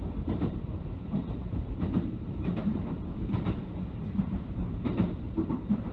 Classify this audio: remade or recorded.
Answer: remade